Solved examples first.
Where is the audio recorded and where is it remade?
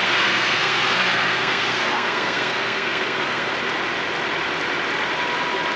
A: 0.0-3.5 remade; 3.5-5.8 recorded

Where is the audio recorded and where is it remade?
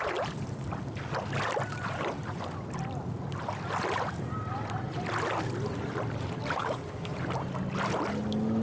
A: 0.0-6.6 recorded; 6.6-7.1 remade; 7.1-8.6 recorded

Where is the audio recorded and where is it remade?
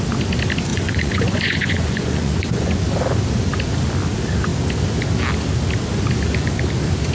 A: 0.0-0.7 recorded; 0.7-2.8 remade; 2.8-7.1 recorded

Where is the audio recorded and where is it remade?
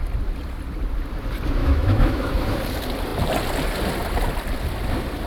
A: 0.0-1.6 recorded; 1.6-2.6 remade; 2.6-5.3 recorded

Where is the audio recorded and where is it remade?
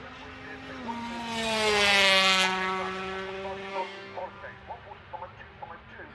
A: 0.0-3.7 recorded; 3.7-4.2 remade; 4.2-6.1 recorded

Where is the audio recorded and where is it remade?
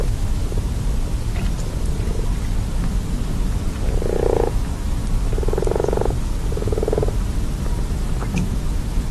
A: 0.0-0.4 remade; 0.4-4.5 recorded; 4.5-5.0 remade; 5.0-7.9 recorded; 7.9-9.1 remade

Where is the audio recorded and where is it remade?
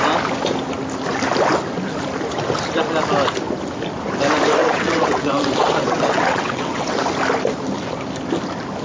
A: 0.0-4.6 recorded; 4.6-7.0 remade; 7.0-8.8 recorded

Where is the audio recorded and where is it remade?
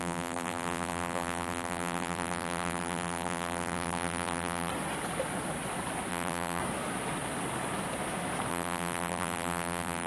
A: 0.0-4.7 remade; 4.7-6.1 recorded; 6.1-6.6 remade; 6.6-8.5 recorded; 8.5-10.1 remade